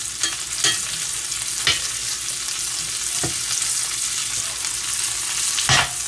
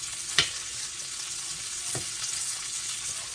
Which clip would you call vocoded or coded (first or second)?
second